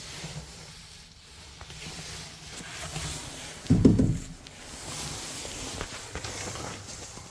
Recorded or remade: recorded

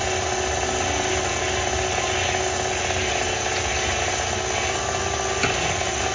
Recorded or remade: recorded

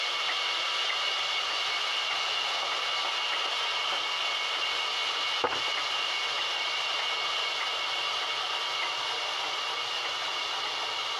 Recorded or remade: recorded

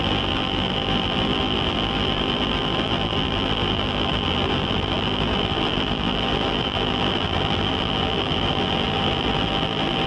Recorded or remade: remade